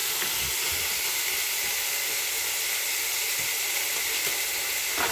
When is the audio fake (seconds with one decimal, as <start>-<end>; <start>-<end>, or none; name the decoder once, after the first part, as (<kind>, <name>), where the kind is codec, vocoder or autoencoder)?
none